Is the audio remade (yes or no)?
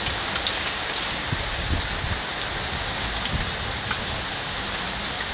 no